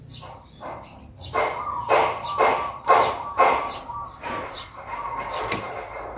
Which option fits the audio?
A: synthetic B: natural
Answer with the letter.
A